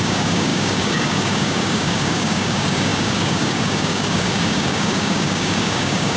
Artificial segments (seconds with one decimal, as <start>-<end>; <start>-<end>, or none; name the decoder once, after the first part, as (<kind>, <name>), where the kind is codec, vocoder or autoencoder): 0.0-6.2 (codec, DAC)